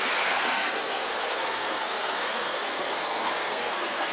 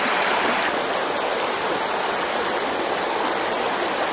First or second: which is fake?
first